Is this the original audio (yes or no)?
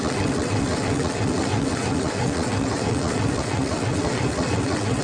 no